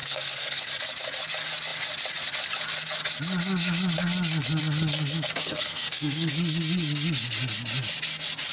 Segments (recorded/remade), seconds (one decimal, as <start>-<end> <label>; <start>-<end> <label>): 0.0-0.7 remade; 0.7-5.4 recorded; 5.4-6.3 remade; 6.3-8.5 recorded